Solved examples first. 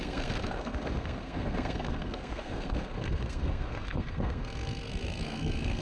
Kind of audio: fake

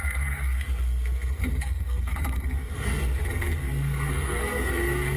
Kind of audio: fake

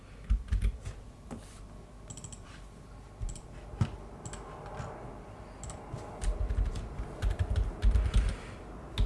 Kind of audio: real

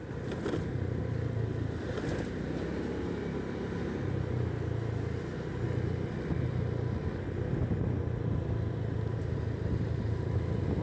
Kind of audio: real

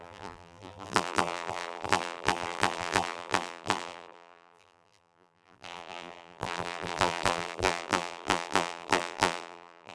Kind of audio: fake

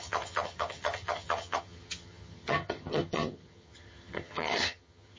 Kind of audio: fake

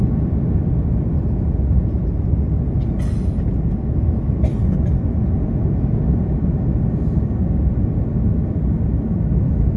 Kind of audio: real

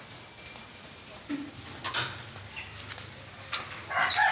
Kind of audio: real